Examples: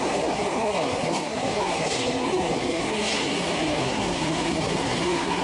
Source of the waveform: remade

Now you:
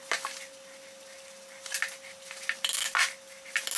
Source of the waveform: recorded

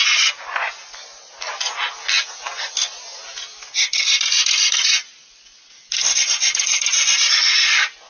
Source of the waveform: recorded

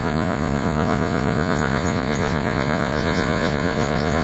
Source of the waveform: remade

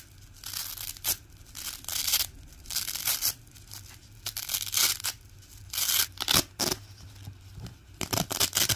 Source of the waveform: recorded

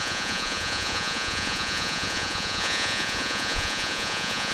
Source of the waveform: remade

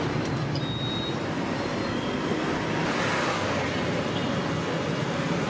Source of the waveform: recorded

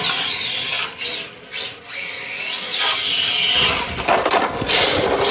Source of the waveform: recorded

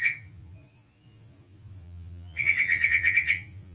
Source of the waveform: remade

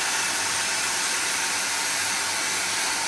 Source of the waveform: recorded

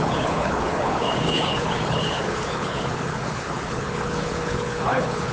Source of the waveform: remade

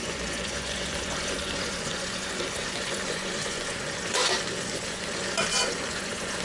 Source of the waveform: remade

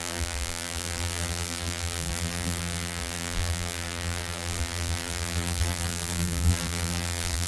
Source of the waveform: remade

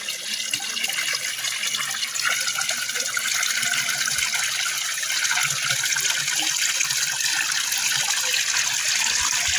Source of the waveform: recorded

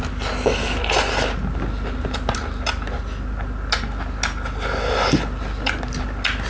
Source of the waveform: recorded